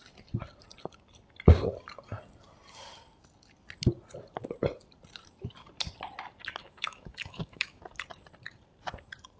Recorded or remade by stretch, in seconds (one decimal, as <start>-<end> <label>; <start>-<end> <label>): 0.0-6.6 recorded; 6.6-7.8 remade; 7.8-9.4 recorded